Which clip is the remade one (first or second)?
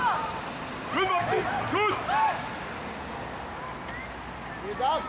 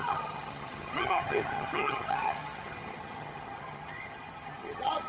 second